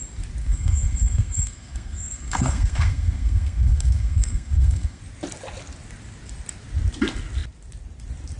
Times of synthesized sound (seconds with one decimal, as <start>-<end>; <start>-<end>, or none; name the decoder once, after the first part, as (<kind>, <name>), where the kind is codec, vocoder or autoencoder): 0.4-5.0 (codec, SNAC)

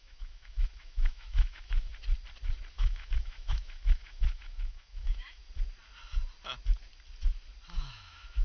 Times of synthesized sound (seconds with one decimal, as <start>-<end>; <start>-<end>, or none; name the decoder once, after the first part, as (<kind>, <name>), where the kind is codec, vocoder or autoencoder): 0.0-1.9 (autoencoder, DAC-VAE); 2.7-5.4; 7.7-8.4